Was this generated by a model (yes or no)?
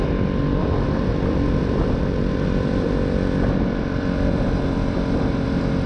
yes